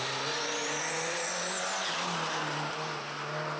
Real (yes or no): yes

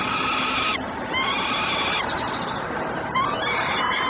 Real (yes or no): yes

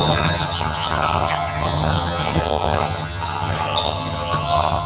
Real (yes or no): no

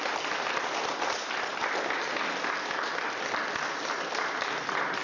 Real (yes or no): yes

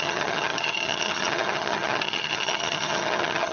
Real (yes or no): no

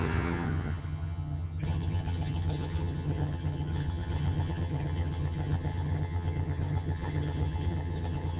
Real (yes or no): no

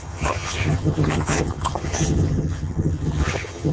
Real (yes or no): no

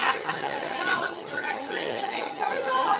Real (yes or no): no